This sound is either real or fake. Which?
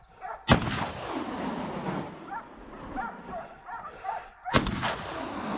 real